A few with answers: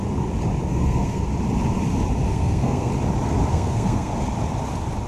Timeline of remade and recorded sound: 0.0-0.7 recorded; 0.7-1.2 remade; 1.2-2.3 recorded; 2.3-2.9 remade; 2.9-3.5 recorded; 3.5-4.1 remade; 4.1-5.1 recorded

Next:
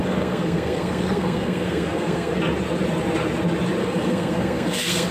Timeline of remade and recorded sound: 0.0-2.4 remade; 2.4-3.8 recorded; 3.8-5.1 remade